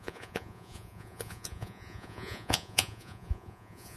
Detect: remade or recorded remade